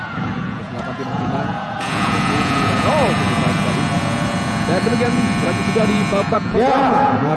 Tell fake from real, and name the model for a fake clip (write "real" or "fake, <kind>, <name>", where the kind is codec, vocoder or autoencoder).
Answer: fake, vocoder, Vocos